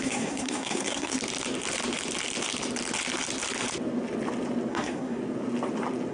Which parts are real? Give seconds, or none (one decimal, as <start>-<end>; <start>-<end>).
1.2-4.7; 5.2-6.1